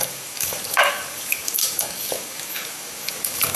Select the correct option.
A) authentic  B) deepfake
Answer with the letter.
B